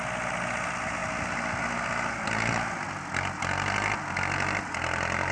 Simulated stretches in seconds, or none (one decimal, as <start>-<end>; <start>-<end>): none

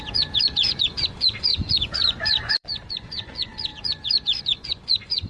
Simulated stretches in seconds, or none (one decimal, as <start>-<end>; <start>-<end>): 0.0-5.3

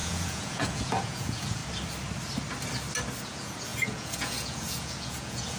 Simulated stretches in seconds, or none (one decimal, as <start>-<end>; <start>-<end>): 0.0-1.6; 3.2-5.6

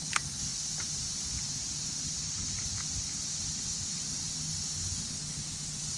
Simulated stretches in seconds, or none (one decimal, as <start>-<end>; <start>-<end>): none

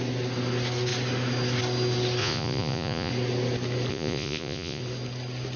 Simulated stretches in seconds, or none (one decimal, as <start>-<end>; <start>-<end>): 2.2-3.1; 3.9-4.8

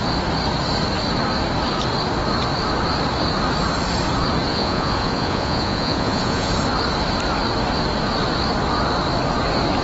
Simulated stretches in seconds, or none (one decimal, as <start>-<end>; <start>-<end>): 4.5-6.5

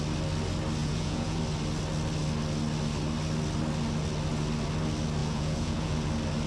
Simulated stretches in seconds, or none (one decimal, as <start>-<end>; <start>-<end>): 0.8-1.4; 5.2-6.1

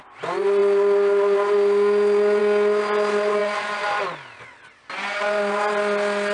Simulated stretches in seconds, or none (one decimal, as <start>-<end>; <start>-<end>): 3.4-4.0